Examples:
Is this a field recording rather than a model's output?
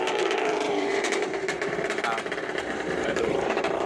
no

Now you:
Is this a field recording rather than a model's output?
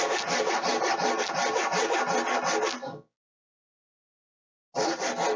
yes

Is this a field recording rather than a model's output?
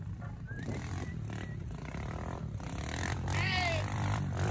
no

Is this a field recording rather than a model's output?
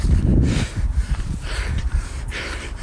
no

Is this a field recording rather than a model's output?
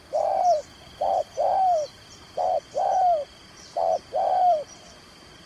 no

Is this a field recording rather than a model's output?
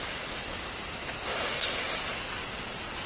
yes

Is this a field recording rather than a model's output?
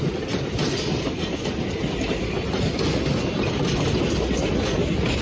yes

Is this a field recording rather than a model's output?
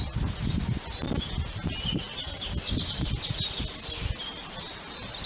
yes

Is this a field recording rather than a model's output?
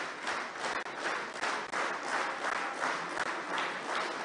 yes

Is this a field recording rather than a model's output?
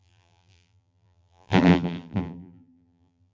no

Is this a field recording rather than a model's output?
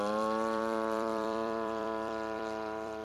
no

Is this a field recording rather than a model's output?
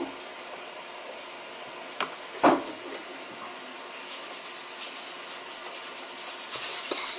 yes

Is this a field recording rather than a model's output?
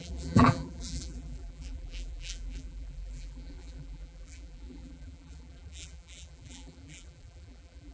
no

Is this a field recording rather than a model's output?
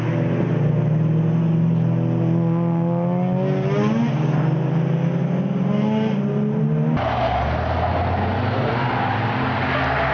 yes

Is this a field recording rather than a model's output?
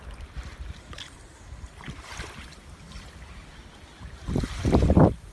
no